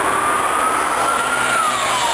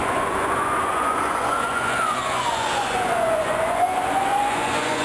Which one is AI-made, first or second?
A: second